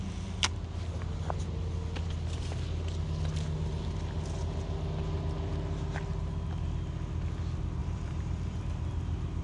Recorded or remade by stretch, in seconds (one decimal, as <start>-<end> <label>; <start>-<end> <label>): 0.0-7.8 recorded; 7.8-8.6 remade; 8.6-9.4 recorded

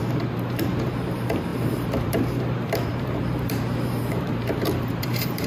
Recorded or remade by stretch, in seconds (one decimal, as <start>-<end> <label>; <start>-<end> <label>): 0.0-5.5 remade

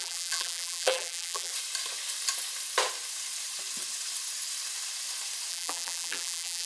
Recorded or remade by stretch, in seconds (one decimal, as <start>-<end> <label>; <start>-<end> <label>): 0.0-1.5 remade; 1.5-5.5 recorded; 5.5-6.7 remade

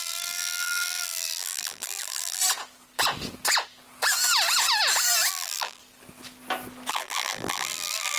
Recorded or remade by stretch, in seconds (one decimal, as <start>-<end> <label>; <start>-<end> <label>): 0.0-2.4 remade; 2.4-5.3 recorded; 5.3-5.8 remade; 5.8-6.9 recorded; 6.9-8.2 remade

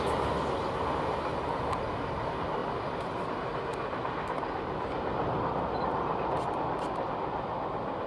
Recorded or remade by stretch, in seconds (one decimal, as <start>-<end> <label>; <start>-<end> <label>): 0.0-2.6 recorded; 2.6-3.1 remade; 3.1-8.1 recorded

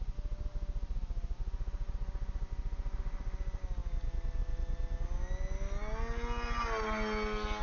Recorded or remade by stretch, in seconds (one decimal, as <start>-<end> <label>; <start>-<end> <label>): 0.0-7.6 recorded

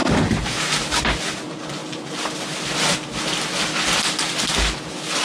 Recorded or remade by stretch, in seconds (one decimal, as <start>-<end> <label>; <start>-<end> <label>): 0.0-1.0 remade; 1.0-5.2 recorded

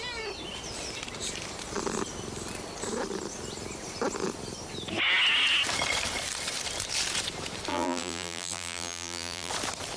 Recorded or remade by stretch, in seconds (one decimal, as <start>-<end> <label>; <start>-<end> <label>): 0.0-7.7 recorded; 7.7-9.5 remade; 9.5-10.0 recorded